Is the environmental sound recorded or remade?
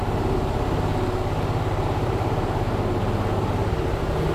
recorded